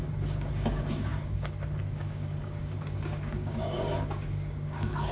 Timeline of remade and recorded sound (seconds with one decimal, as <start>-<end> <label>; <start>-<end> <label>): 0.0-5.1 remade